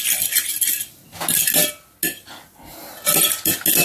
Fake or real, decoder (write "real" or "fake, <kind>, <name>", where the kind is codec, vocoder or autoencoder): real